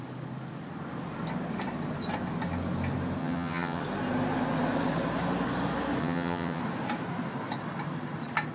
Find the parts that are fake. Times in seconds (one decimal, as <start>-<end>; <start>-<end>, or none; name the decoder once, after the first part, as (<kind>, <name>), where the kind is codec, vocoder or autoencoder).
3.2-3.8 (vocoder, HiFi-GAN); 6.0-6.6